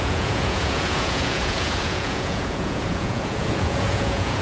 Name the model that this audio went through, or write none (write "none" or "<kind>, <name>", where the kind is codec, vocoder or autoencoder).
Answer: vocoder, Vocos